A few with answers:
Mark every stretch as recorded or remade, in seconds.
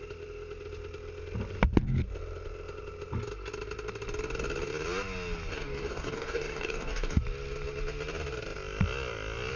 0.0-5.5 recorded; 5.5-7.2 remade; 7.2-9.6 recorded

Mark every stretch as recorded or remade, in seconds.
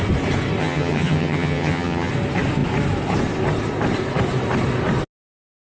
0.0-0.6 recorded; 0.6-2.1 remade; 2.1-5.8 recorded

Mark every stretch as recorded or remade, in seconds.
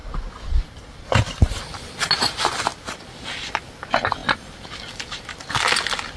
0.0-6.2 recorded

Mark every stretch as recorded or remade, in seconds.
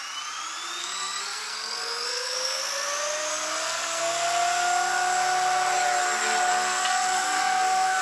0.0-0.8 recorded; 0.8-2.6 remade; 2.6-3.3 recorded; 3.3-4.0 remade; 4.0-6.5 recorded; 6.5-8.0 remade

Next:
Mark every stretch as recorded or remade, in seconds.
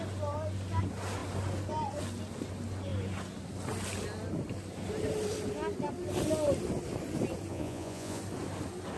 0.0-7.5 recorded; 7.5-8.2 remade; 8.2-9.0 recorded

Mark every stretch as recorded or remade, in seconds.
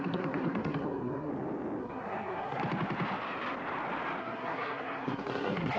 0.0-1.3 remade; 1.3-1.8 recorded; 1.8-2.6 remade; 2.6-4.2 recorded; 4.2-5.8 remade